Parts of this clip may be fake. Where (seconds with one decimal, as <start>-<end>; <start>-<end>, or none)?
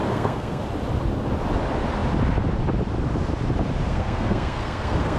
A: 0.0-0.6; 3.9-5.2